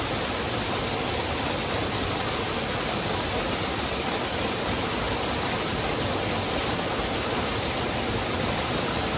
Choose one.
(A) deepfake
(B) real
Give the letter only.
B